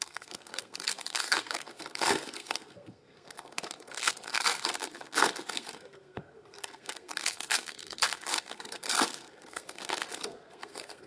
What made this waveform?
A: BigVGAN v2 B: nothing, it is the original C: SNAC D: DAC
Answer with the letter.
C